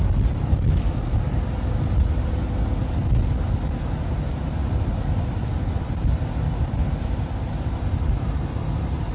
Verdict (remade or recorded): recorded